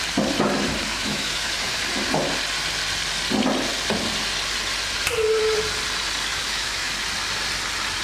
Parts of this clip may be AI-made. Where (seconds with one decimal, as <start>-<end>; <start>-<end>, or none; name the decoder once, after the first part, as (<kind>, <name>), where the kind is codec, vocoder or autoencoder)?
0.9-1.8 (autoencoder, DAC-VAE); 6.3-6.9